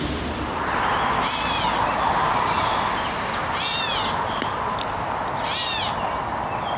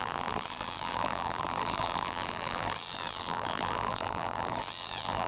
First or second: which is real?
first